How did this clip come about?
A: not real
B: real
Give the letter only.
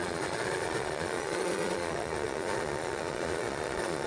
A